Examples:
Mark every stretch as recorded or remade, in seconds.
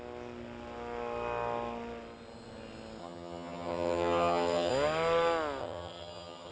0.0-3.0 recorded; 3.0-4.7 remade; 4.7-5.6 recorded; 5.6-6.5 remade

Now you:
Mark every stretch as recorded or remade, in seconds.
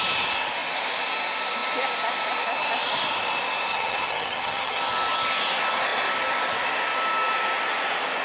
0.0-3.7 recorded; 3.7-4.8 remade; 4.8-8.2 recorded